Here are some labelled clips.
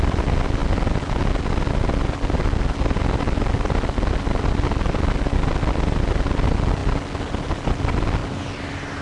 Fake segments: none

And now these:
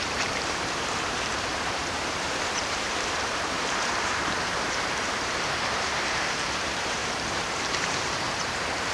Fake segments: 0.0-8.9 (vocoder, BigVGAN v2)

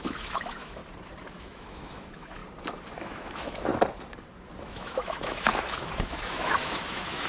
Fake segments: 0.0-0.8 (autoencoder, DAC-VAE); 1.4-2.4; 3.0-3.7; 4.6-7.3

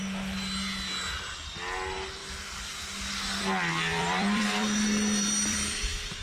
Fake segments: 3.9-6.2 (vocoder, BigVGAN v2)

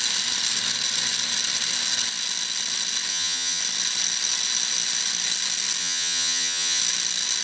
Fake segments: 3.1-3.6 (vocoder, HiFi-GAN); 5.8-6.8

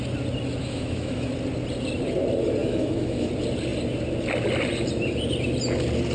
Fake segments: 0.6-1.3 (autoencoder, DAC-VAE); 2.6-3.3

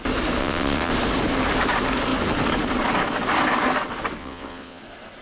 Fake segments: 0.4-0.9 (vocoder, WaveNeXt); 4.2-4.8

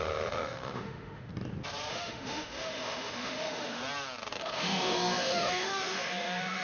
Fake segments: 0.0-1.3 (autoencoder, DAC-VAE); 1.9-3.8; 4.4-6.6